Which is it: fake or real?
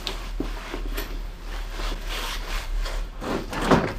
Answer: fake